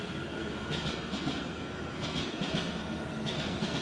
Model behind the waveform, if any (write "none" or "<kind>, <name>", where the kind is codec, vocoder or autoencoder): codec, SNAC